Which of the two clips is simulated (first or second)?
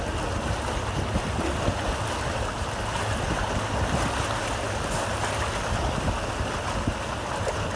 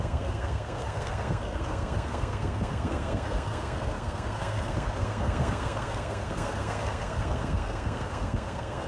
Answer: second